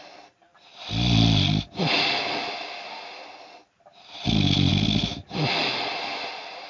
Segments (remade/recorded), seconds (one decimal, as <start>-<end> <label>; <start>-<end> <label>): 0.0-6.7 recorded